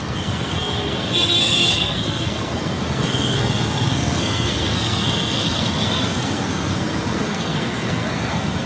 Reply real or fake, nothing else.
fake